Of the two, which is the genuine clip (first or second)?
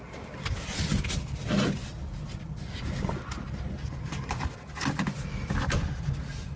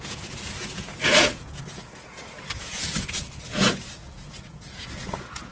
first